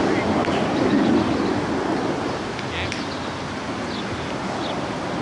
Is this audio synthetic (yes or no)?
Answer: no